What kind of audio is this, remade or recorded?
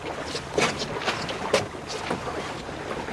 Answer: recorded